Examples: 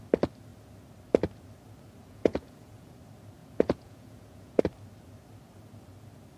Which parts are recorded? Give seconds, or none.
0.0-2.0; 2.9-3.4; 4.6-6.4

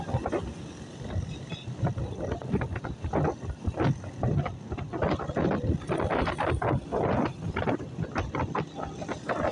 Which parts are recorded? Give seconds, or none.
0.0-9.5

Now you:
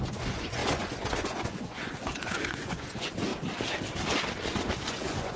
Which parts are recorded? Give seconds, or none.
3.3-4.9

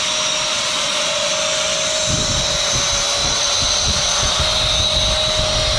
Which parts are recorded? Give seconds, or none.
0.0-0.5; 1.3-3.2; 4.4-5.8

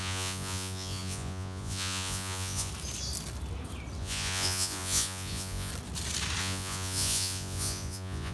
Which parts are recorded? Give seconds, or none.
2.7-4.0; 5.7-6.4

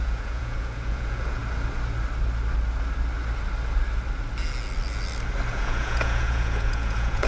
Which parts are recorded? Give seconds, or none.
1.4-5.5